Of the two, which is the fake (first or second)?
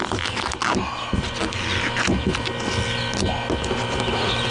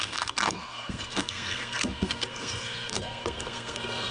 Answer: second